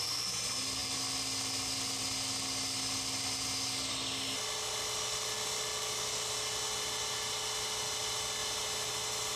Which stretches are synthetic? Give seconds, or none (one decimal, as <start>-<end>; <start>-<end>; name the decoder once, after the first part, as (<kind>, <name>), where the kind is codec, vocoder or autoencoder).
none